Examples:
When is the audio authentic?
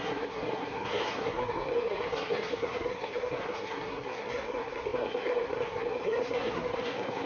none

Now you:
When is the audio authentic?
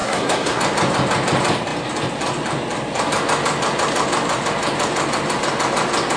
0.6-6.2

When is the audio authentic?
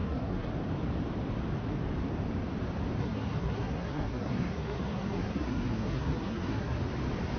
0.5-3.0; 6.8-7.4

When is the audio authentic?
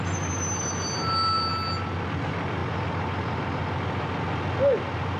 0.0-5.2